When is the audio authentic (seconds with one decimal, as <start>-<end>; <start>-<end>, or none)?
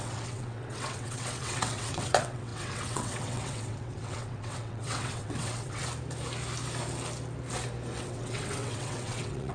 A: 5.8-8.0